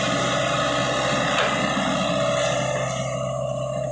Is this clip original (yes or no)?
yes